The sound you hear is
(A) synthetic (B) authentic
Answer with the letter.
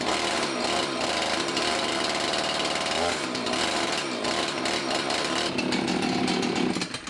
B